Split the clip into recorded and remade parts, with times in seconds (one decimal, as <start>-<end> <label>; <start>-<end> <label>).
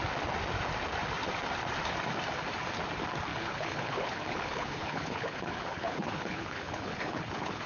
0.0-3.3 recorded; 3.3-7.7 remade